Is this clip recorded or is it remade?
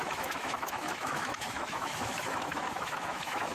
remade